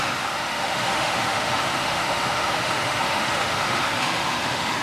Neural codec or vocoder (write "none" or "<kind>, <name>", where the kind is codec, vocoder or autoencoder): autoencoder, DAC-VAE